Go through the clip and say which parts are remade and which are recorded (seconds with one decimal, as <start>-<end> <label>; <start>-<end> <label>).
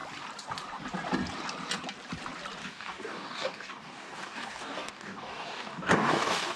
0.0-2.6 recorded; 2.6-6.6 remade